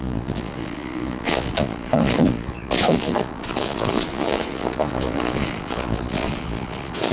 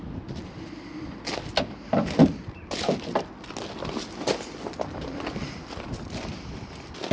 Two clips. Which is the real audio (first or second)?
second